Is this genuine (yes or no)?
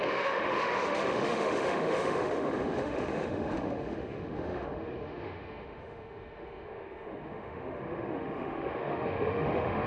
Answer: no